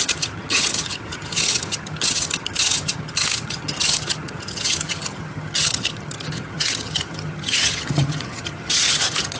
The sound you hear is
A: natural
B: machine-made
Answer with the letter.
B